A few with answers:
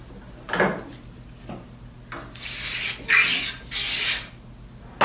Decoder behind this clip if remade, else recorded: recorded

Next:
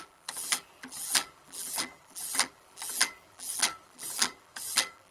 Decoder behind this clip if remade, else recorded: remade, vocoder, BigVGAN v2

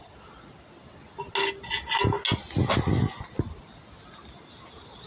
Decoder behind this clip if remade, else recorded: recorded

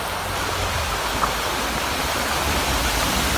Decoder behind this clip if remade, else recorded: recorded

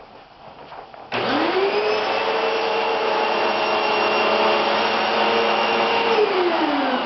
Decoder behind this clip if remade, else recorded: recorded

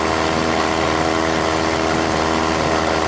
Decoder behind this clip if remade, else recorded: recorded